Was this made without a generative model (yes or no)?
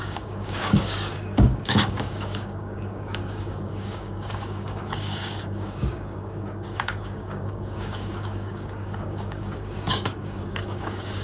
no